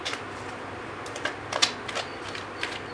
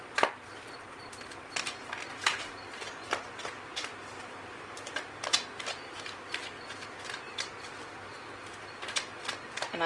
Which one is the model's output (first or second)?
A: second